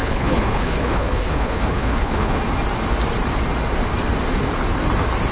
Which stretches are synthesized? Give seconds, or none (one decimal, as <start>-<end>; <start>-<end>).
0.0-2.4